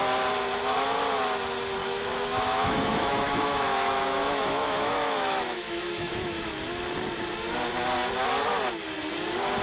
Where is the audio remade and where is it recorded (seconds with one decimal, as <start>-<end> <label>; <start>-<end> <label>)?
0.0-1.8 recorded; 1.8-6.5 remade; 6.5-9.6 recorded